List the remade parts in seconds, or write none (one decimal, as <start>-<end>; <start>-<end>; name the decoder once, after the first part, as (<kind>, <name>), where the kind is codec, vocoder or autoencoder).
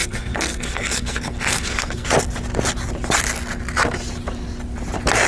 0.0-2.1 (codec, SNAC)